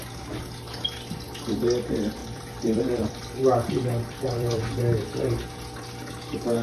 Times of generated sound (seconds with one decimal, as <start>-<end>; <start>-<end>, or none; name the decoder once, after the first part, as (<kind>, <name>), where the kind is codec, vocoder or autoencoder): 2.2-4.6 (vocoder, BigVGAN v2)

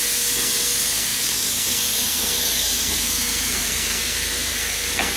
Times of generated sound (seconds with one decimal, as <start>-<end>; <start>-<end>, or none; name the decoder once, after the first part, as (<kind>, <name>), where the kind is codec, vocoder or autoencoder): 0.0-5.2 (codec, SNAC)